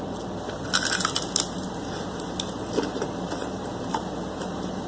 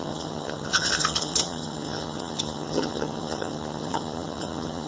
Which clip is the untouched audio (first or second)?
first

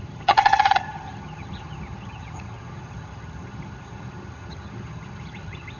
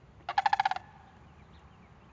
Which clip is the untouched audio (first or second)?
second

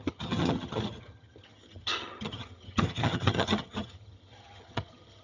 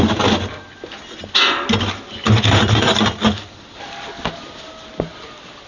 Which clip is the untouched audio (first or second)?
second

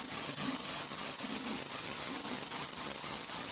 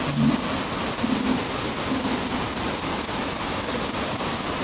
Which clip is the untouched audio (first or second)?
second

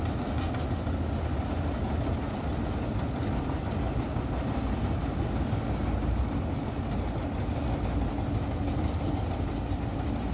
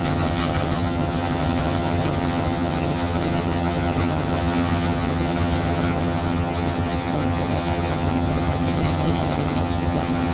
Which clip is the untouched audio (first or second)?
first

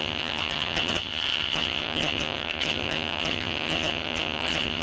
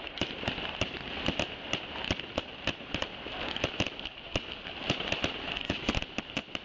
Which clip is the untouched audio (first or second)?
second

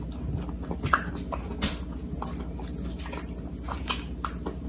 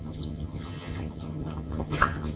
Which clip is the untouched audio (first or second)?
first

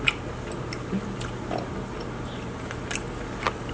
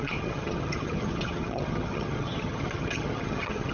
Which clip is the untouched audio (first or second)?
first